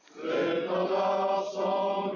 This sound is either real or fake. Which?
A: real